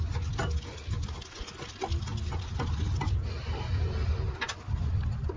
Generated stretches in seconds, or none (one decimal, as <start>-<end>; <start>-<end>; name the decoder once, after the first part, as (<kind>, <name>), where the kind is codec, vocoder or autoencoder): none